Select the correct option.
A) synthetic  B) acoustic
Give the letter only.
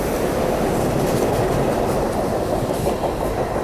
B